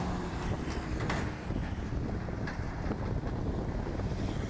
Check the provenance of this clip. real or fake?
real